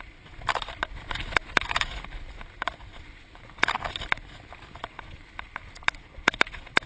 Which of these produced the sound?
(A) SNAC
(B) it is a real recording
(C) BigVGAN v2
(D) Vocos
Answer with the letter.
B